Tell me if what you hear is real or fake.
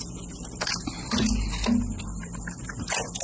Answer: real